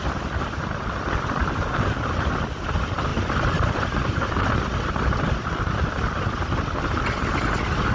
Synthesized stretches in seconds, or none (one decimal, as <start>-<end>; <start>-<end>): none